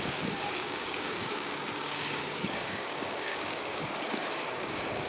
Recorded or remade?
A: remade